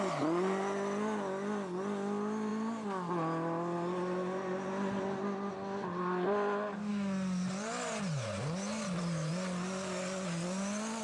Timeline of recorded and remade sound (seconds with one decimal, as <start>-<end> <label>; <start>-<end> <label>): 0.0-11.0 recorded